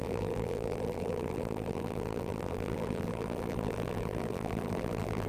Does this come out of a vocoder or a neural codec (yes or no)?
yes